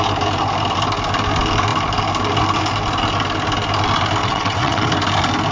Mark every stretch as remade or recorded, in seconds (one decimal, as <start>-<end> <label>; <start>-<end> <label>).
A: 0.0-4.2 recorded; 4.2-4.9 remade; 4.9-5.5 recorded